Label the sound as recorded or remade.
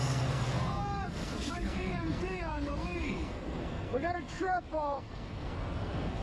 remade